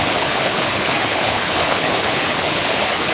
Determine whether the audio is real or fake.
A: fake